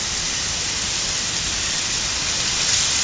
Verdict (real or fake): real